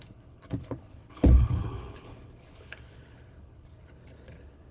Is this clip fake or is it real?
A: fake